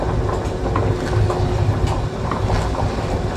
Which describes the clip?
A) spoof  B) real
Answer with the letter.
B